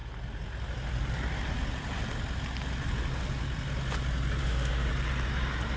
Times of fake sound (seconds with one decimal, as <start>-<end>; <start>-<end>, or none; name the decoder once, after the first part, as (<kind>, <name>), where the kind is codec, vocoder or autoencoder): 4.4-4.9 (autoencoder, DAC-VAE)